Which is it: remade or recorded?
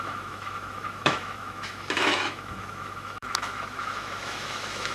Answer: remade